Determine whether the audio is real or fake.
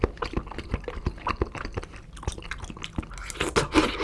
real